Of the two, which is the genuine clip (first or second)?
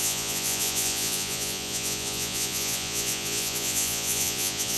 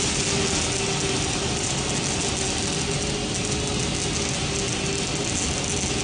second